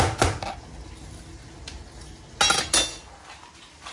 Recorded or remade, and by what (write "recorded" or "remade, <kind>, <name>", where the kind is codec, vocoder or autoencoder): recorded